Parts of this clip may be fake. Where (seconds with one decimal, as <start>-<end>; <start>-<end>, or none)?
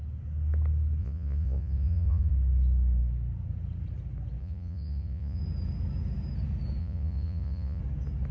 1.0-2.3; 4.4-5.4; 6.8-7.8